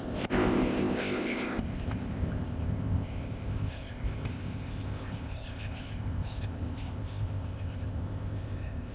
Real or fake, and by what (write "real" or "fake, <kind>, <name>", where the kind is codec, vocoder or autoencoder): fake, codec, ZipCodec